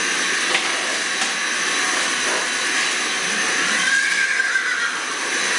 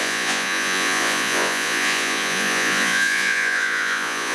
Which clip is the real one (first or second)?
first